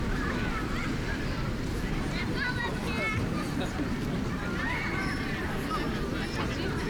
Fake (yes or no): yes